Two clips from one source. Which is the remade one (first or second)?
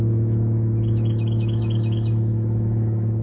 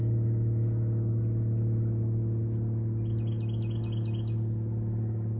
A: first